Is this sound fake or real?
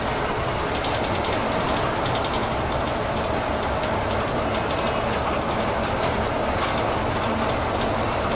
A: real